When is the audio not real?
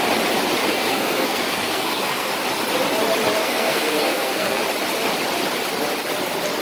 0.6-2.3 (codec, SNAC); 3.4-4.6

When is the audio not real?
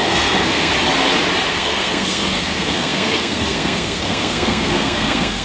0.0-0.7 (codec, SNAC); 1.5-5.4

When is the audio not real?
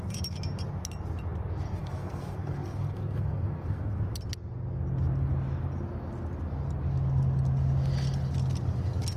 1.7-4.0 (codec, SNAC)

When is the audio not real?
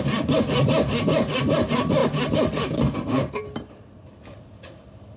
none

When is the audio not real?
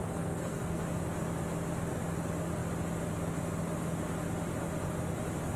0.0-0.8 (codec, SNAC)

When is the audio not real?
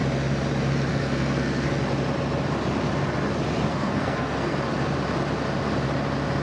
0.9-1.7 (codec, SNAC); 3.7-4.6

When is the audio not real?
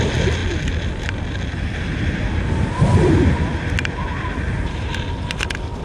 none